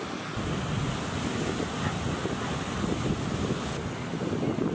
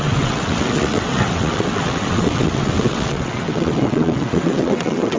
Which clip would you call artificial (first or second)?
second